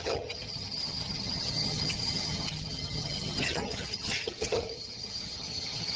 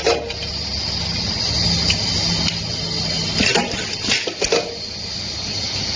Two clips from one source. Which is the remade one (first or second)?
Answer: first